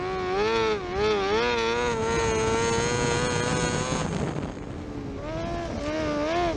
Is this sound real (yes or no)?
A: yes